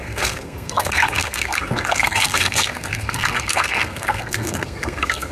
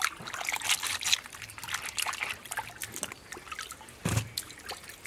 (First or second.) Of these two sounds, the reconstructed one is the first